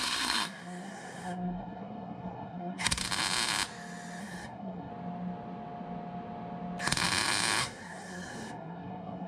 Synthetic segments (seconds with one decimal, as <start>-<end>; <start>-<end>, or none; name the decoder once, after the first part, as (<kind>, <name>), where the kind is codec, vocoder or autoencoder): 0.0-3.0 (codec, SNAC); 4.2-4.9; 7.6-9.3